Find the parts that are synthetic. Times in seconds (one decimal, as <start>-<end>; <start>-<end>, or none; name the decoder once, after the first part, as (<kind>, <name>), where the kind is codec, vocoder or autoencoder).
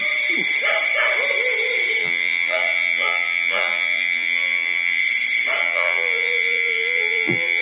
2.0-5.0 (vocoder, BigVGAN v2); 5.6-7.6